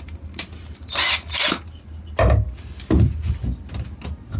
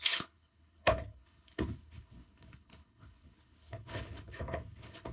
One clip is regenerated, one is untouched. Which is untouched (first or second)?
first